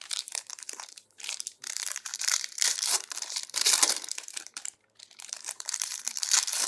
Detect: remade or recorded remade